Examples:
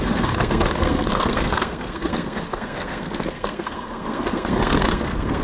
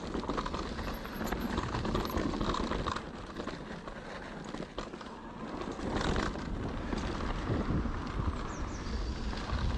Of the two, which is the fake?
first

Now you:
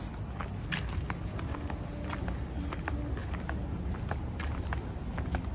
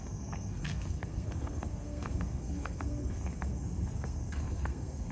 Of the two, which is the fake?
second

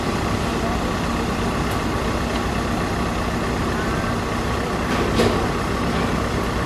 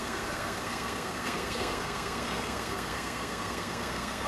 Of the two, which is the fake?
second